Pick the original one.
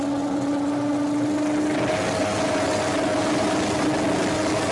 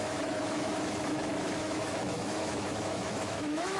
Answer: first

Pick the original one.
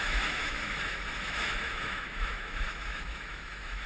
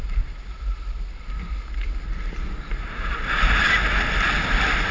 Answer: second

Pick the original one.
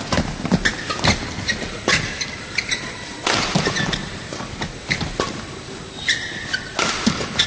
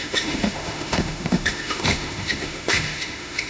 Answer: first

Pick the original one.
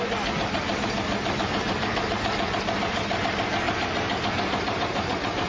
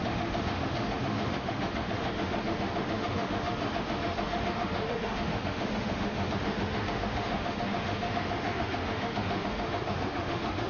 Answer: first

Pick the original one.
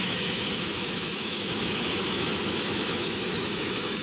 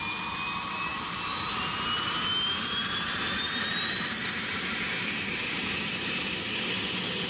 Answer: second